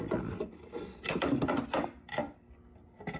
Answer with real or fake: fake